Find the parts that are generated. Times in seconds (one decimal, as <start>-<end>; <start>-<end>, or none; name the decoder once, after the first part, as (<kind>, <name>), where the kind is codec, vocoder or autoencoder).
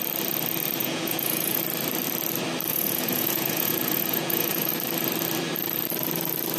0.8-1.6 (vocoder, Vocos); 2.7-4.7